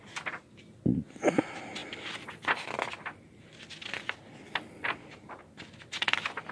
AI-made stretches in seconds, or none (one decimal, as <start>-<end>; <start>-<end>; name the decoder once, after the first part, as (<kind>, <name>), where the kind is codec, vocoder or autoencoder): none